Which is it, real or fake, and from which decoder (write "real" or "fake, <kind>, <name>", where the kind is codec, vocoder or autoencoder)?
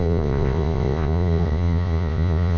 fake, vocoder, Vocos